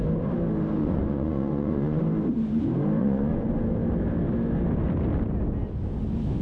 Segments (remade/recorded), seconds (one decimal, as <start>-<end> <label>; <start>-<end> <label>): 0.0-0.8 recorded; 0.8-2.0 remade; 2.0-3.0 recorded; 3.0-3.5 remade; 3.5-6.4 recorded